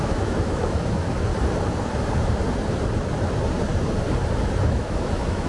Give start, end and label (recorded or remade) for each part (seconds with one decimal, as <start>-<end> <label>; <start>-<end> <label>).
0.0-1.3 remade; 1.3-4.6 recorded; 4.6-5.5 remade